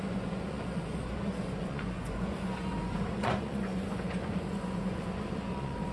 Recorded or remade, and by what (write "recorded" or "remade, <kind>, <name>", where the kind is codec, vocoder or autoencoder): remade, vocoder, Vocos